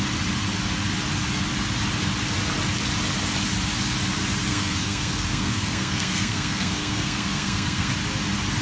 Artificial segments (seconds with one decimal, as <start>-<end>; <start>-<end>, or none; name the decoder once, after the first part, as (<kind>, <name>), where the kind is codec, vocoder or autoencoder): 4.5-7.9 (codec, SNAC)

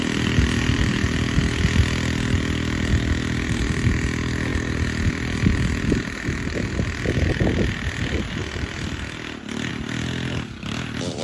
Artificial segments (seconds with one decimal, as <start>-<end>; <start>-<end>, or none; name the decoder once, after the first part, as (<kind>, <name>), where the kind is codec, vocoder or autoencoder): none

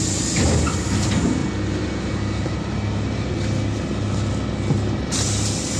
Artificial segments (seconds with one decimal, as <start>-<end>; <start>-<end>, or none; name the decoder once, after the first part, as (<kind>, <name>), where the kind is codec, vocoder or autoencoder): none

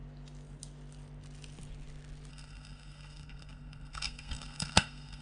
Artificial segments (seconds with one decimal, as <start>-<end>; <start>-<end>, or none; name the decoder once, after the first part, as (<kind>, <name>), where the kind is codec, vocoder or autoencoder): 2.3-5.2 (codec, SNAC)

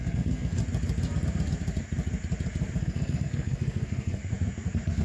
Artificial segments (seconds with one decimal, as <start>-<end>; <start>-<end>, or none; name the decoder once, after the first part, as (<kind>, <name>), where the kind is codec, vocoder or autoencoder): 0.0-0.6 (codec, SNAC); 2.8-4.2

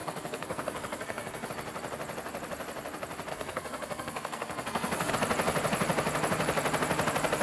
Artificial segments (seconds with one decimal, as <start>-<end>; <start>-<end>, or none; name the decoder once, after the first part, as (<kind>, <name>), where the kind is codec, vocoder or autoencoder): 0.0-1.5 (codec, SNAC); 3.3-5.1

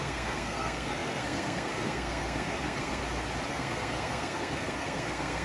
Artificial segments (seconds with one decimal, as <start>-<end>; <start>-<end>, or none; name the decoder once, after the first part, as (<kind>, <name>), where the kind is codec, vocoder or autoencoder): 0.0-3.0 (codec, SNAC); 3.5-5.4

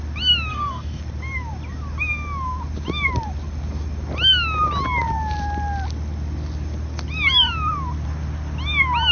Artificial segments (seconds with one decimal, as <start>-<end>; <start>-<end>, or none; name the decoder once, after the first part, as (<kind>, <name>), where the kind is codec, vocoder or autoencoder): 0.5-1.0 (codec, SNAC)